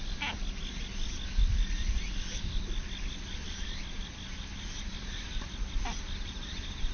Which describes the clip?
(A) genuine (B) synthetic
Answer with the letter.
A